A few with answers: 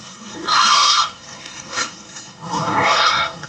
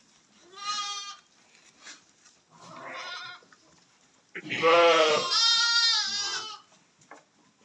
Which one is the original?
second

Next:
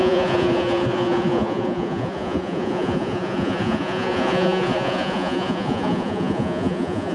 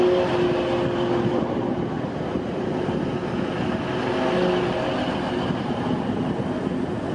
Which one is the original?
second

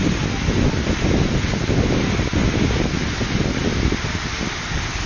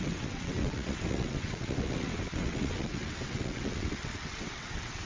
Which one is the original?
first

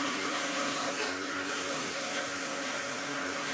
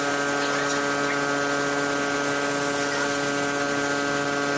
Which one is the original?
second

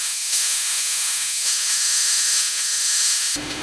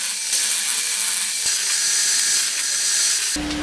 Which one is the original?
second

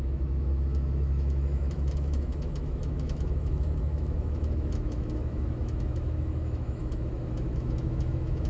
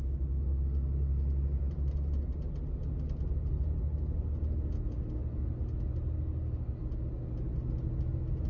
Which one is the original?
second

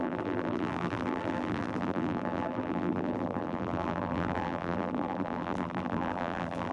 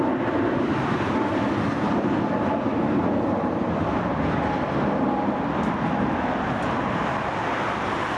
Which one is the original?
second